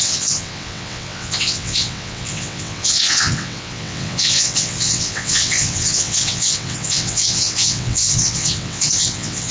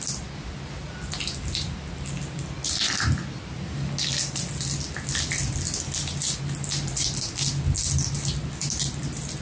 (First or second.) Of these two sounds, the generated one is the first